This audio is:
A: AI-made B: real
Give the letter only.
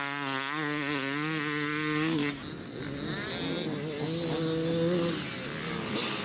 B